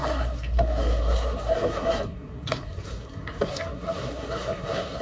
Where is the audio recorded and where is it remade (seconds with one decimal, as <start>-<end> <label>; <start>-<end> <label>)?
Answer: 0.0-5.0 remade